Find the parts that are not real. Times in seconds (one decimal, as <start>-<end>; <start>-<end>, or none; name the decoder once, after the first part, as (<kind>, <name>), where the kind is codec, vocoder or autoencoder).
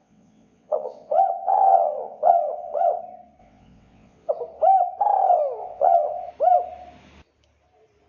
0.0-3.0 (vocoder, WaveNeXt); 3.4-4.3; 5.6-6.3